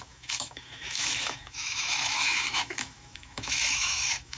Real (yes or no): no